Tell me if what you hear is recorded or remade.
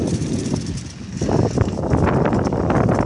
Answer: recorded